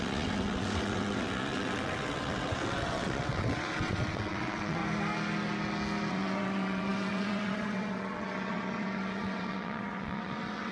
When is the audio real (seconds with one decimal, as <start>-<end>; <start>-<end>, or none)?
4.8-6.1